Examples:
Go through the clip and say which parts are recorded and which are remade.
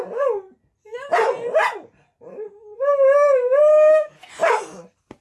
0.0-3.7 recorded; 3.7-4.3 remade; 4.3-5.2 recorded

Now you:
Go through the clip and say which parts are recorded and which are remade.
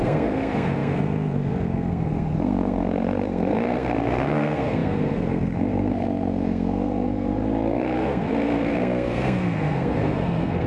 0.0-10.7 remade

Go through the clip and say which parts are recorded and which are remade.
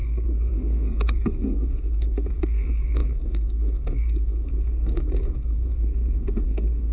0.0-6.9 remade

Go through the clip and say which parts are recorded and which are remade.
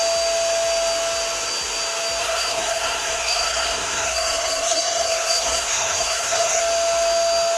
0.0-2.2 recorded; 2.2-6.6 remade; 6.6-7.6 recorded